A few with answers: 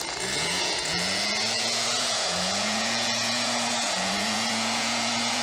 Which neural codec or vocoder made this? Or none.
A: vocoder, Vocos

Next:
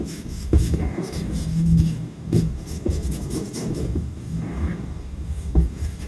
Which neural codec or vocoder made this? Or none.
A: codec, DAC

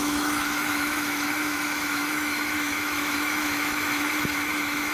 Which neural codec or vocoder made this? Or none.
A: autoencoder, DAC-VAE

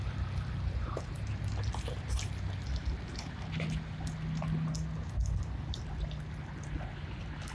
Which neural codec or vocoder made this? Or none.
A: none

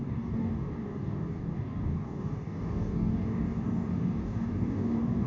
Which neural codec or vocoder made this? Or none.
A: codec, DAC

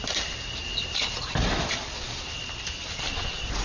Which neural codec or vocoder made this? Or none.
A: none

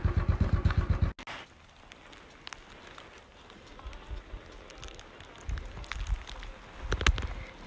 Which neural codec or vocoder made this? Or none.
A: none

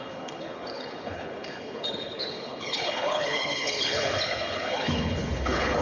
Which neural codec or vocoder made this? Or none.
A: codec, HILCodec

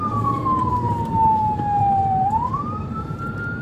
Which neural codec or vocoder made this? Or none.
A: vocoder, BigVGAN v2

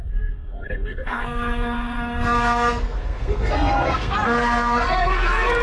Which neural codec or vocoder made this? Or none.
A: codec, SNAC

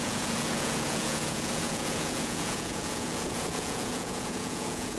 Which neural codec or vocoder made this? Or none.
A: vocoder, Vocos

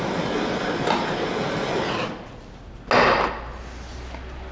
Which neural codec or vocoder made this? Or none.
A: none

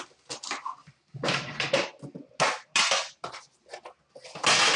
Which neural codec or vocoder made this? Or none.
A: none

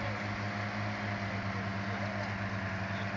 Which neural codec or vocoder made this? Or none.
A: none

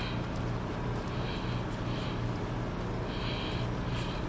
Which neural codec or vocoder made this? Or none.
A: none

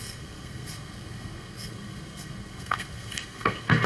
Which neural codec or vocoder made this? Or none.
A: codec, SNAC